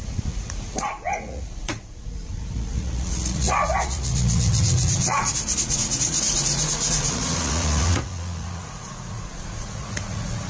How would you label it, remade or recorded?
remade